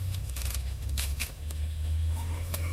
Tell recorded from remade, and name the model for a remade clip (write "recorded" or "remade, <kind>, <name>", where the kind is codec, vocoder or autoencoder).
remade, autoencoder, DAC-VAE